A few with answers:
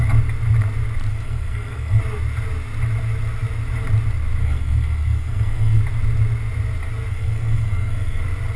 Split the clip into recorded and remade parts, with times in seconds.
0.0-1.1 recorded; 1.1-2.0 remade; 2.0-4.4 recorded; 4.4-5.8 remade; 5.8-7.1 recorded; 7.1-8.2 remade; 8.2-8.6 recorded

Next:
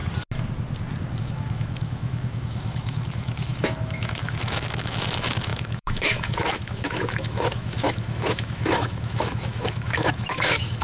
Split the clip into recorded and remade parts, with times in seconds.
0.0-1.2 recorded; 1.2-10.8 remade

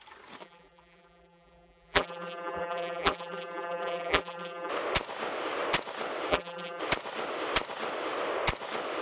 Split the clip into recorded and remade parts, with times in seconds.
0.0-0.4 recorded; 0.4-4.7 remade; 4.7-6.3 recorded; 6.3-6.8 remade; 6.8-9.0 recorded

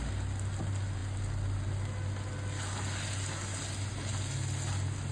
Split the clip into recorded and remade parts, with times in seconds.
0.0-5.1 recorded

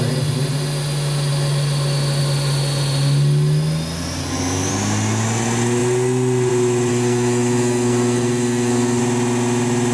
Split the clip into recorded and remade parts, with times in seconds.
0.0-4.2 recorded; 4.2-4.7 remade; 4.7-6.9 recorded; 6.9-9.0 remade; 9.0-9.9 recorded